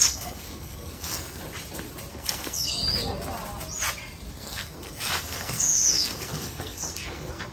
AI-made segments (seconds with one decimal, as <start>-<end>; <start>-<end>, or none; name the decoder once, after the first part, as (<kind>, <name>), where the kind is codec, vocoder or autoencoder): 0.0-1.4 (codec, SNAC); 2.1-2.8; 4.3-7.5